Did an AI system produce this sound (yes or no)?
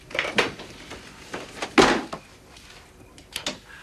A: no